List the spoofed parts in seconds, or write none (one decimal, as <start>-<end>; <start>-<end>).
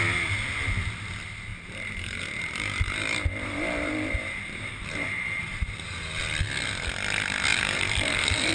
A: 1.5-6.2; 7.5-8.5